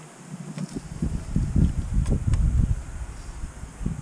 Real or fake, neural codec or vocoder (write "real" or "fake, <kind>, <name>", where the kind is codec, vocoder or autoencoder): real